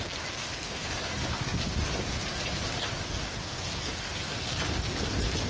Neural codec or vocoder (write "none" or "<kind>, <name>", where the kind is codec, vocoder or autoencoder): none